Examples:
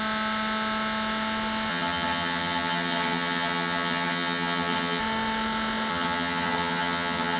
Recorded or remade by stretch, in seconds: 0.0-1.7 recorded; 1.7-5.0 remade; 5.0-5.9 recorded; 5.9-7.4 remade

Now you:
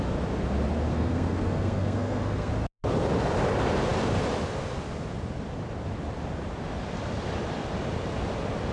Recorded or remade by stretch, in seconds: 0.0-0.9 recorded; 0.9-2.5 remade; 2.5-8.7 recorded

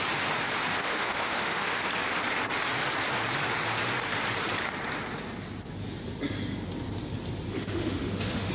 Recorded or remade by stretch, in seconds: 0.0-0.8 recorded; 0.8-1.8 remade; 1.8-7.5 recorded; 7.5-8.5 remade

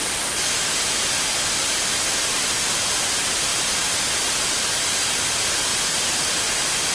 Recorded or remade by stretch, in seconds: 0.0-6.9 recorded

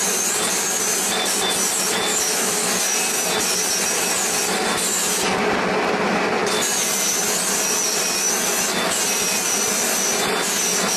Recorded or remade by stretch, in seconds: 0.0-2.1 recorded; 2.1-2.7 remade; 2.7-11.0 recorded

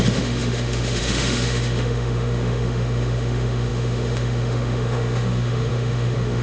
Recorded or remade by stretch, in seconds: 0.0-6.4 remade

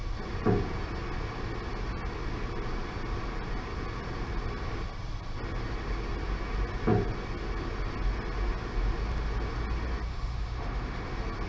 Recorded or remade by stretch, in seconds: 0.0-10.1 recorded; 10.1-11.1 remade; 11.1-11.5 recorded

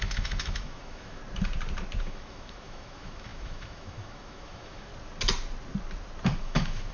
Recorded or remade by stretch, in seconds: 0.0-1.2 remade; 1.2-2.0 recorded; 2.0-4.9 remade; 4.9-6.4 recorded; 6.4-6.9 remade